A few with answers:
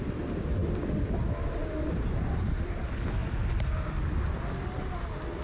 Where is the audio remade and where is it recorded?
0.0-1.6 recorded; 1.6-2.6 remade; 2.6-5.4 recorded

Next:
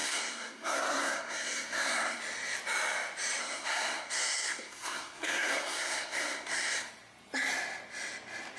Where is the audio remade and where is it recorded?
0.0-2.2 remade; 2.2-3.4 recorded; 3.4-6.9 remade; 6.9-8.6 recorded